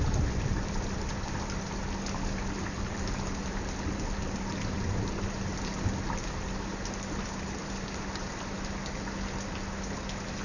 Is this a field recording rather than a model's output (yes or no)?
yes